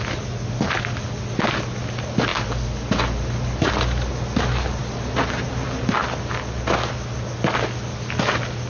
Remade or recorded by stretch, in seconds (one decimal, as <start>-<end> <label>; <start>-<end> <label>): 0.0-8.7 recorded